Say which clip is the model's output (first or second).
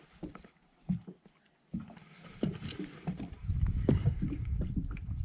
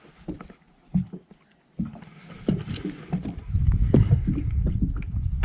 first